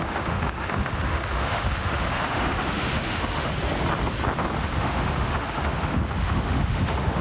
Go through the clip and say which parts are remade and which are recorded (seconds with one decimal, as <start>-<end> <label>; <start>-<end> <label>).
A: 0.0-3.5 remade; 3.5-4.6 recorded; 4.6-7.2 remade